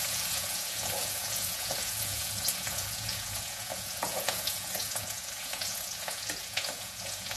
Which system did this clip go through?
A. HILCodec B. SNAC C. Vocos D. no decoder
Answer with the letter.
C